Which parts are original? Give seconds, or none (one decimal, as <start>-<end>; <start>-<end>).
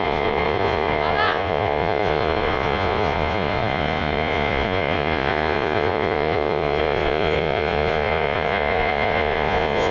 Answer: none